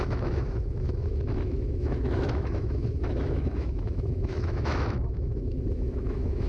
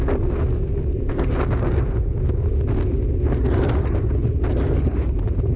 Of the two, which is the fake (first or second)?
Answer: first